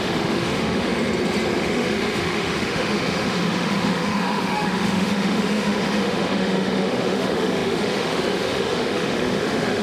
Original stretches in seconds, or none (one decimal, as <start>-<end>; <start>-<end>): 0.9-1.6